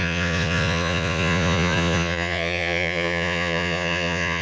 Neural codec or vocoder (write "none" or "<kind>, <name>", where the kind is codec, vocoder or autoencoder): vocoder, Vocos